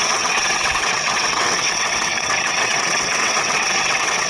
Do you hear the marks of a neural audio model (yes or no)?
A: yes